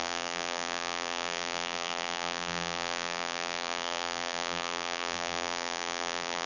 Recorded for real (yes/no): no